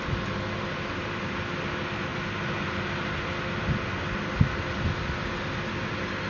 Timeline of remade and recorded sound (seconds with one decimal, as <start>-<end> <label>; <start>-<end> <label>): 0.0-6.3 recorded